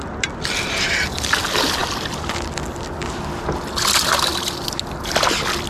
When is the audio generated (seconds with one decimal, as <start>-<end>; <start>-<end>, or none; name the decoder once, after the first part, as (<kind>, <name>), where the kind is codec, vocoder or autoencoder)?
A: none